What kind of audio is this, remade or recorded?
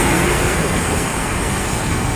remade